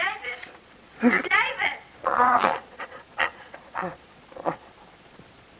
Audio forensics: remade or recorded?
remade